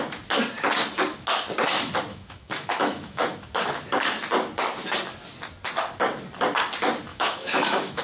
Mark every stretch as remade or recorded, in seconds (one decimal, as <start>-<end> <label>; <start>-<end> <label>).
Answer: 0.0-2.1 recorded; 2.1-3.2 remade; 3.2-7.1 recorded; 7.1-8.0 remade